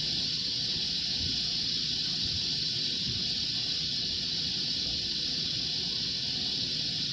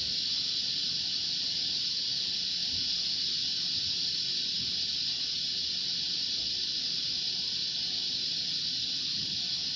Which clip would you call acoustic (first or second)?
second